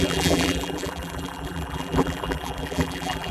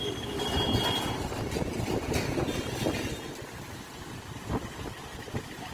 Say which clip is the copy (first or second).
first